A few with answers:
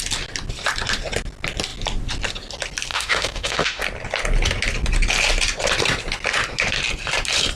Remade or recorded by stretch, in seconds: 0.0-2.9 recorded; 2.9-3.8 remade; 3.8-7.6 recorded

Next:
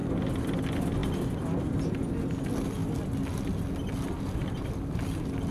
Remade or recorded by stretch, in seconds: 0.0-5.5 recorded

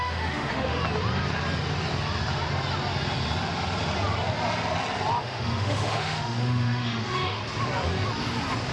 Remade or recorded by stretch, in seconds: 0.0-0.8 remade; 0.8-5.2 recorded; 5.2-7.4 remade; 7.4-8.7 recorded

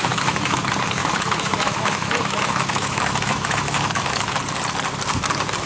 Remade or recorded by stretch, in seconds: 0.0-0.6 remade; 0.6-1.0 recorded; 1.0-4.4 remade; 4.4-5.7 recorded

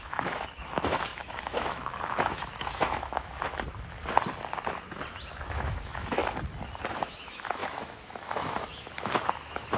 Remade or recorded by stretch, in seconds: 0.0-3.5 remade; 3.5-5.4 recorded; 5.4-6.2 remade; 6.2-6.9 recorded; 6.9-9.8 remade

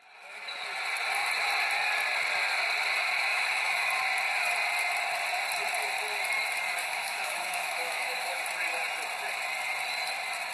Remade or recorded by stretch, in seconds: 0.0-3.3 recorded; 3.3-3.9 remade; 3.9-6.8 recorded; 6.8-8.4 remade; 8.4-10.5 recorded

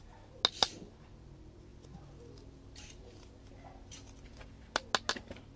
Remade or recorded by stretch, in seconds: 0.0-5.6 recorded

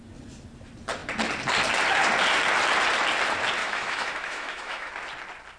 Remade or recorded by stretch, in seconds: 0.0-3.6 recorded; 3.6-4.9 remade; 4.9-5.6 recorded